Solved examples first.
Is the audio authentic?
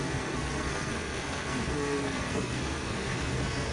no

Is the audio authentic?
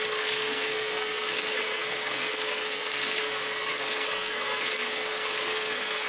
no